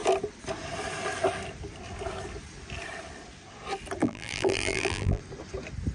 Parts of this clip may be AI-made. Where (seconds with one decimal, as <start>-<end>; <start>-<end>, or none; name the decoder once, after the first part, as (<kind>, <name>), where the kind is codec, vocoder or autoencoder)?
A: 4.0-5.2 (vocoder, BigVGAN v2)